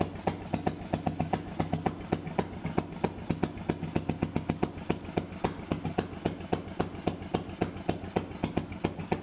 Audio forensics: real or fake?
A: real